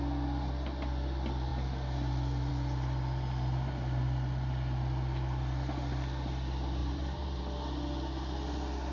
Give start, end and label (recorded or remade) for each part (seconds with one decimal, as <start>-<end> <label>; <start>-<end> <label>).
0.0-6.8 recorded; 6.8-7.4 remade; 7.4-8.9 recorded